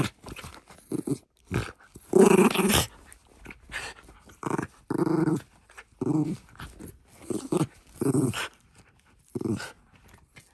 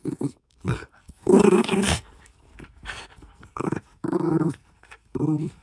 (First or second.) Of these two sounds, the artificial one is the second